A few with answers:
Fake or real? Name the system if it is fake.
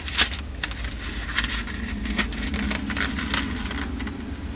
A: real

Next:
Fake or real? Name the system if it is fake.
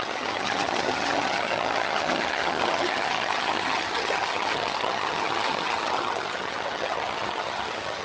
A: fake, vocoder, HiFi-GAN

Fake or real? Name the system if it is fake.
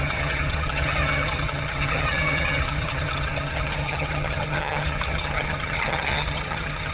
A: fake, vocoder, HiFi-GAN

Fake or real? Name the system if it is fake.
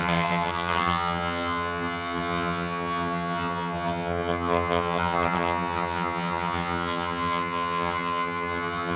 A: fake, vocoder, HiFi-GAN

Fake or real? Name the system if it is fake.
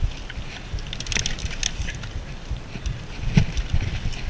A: real